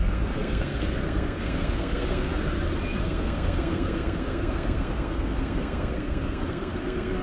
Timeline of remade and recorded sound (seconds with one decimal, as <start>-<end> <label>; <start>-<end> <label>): 0.0-2.3 remade; 2.3-3.0 recorded; 3.0-7.2 remade